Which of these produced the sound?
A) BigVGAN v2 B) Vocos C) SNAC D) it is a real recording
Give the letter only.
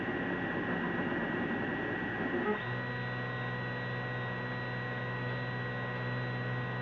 D